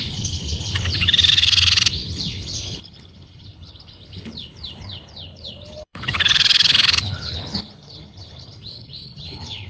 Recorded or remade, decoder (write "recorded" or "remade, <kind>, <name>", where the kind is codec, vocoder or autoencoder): remade, codec, HILCodec